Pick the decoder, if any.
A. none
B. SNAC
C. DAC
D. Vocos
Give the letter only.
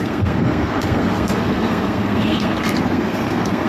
B